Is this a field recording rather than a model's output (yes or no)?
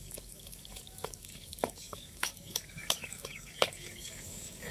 no